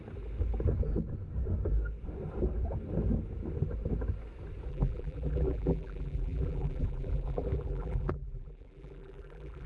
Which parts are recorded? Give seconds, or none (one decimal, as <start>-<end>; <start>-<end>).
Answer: 0.0-4.7